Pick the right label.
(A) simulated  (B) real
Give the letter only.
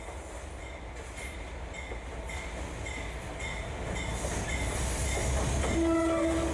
B